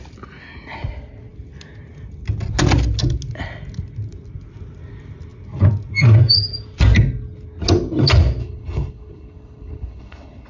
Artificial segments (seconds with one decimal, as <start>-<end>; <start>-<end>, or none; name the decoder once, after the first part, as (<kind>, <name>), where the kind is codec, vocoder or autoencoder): 8.4-10.5 (codec, HILCodec)